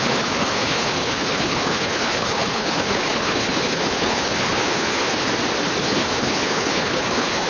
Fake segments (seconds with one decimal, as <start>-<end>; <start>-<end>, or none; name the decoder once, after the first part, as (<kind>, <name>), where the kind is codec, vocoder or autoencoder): 0.0-5.3 (codec, HILCodec); 5.8-7.5